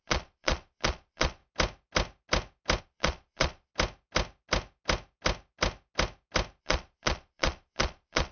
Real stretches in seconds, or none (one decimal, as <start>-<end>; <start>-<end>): 1.4-2.8; 3.7-6.6